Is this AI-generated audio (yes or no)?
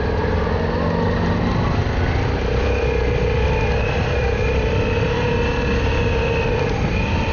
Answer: no